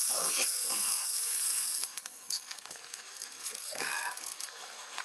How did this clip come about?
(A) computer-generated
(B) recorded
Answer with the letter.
A